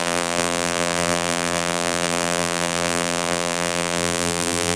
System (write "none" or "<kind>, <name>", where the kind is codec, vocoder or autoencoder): vocoder, BigVGAN v2